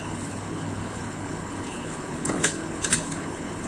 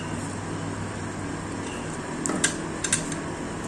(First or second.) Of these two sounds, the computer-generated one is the first